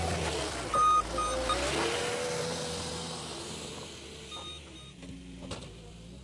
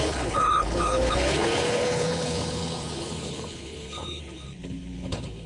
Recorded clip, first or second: first